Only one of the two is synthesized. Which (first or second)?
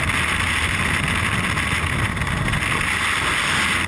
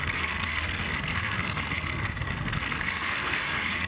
second